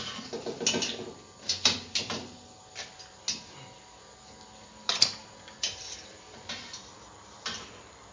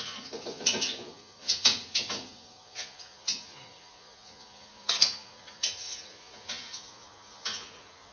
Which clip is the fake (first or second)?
second